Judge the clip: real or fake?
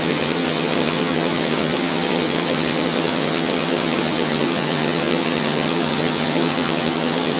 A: fake